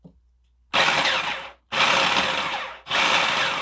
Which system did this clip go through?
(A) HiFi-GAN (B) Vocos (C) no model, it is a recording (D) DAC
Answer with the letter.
C